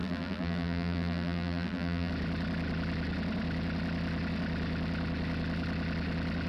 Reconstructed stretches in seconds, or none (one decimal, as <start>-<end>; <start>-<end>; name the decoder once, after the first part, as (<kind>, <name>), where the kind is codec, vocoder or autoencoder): 0.0-2.1 (vocoder, BigVGAN v2)